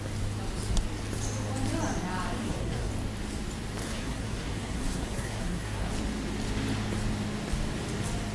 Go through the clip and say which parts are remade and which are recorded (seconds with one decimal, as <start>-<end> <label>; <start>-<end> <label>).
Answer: 0.0-2.4 recorded; 2.4-2.9 remade; 2.9-3.8 recorded; 3.8-5.9 remade; 5.9-8.3 recorded